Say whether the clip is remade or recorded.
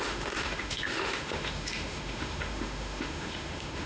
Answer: remade